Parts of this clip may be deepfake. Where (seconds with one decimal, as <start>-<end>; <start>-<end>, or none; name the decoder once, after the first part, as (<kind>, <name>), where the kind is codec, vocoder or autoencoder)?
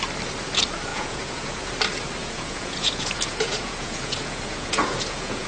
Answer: 0.9-1.7 (vocoder, Vocos); 2.2-5.5